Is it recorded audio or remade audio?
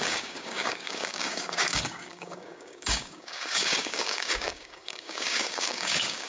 remade